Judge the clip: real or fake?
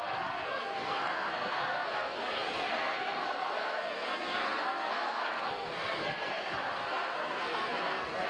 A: fake